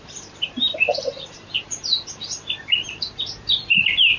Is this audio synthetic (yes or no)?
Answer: yes